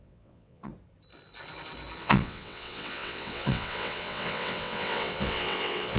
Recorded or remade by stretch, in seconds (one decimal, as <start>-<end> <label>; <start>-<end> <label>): 0.0-0.7 remade; 0.7-2.0 recorded; 2.0-6.0 remade